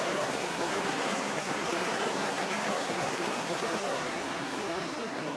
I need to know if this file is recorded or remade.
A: remade